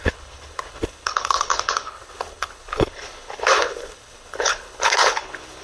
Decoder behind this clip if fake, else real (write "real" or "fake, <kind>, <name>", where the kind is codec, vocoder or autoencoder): fake, codec, HILCodec